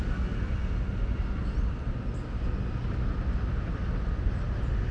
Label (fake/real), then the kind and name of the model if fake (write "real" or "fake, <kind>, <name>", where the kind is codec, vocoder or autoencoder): real